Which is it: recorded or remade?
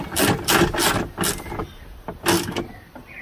recorded